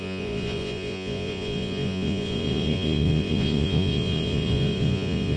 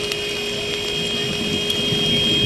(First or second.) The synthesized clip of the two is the first